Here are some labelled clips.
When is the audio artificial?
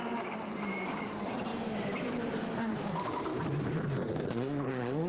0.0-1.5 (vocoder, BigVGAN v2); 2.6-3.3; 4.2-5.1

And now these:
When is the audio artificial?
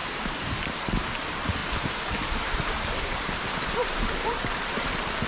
0.0-0.6 (vocoder, BigVGAN v2); 1.6-4.8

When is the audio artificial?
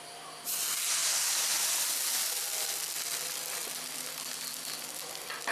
none